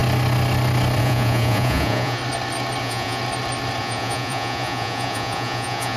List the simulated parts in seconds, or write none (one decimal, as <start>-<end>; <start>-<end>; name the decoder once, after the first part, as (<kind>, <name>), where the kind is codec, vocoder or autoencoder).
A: 1.0-2.2 (vocoder, Vocos); 2.8-3.2; 3.8-6.0